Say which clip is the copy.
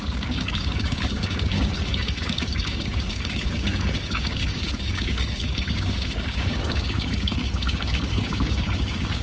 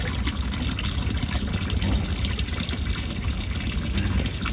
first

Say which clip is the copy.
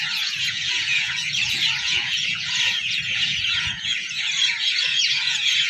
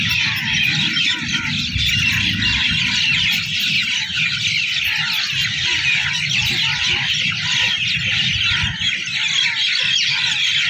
first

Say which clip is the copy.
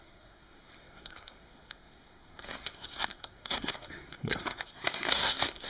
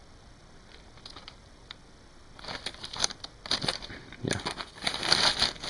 first